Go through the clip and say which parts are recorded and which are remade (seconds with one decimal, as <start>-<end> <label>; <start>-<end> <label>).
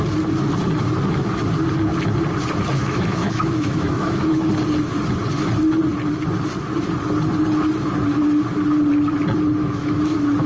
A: 0.0-2.8 recorded; 2.8-4.5 remade; 4.5-9.6 recorded; 9.6-10.5 remade